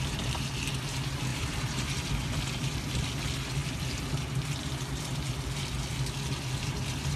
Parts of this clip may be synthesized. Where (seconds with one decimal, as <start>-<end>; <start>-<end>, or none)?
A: 1.3-2.1